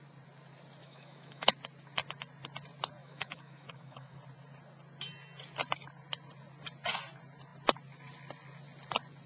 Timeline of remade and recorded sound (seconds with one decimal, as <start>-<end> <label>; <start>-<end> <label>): 0.0-0.8 recorded; 0.8-1.5 remade; 1.5-3.0 recorded; 3.0-4.2 remade; 4.2-9.3 recorded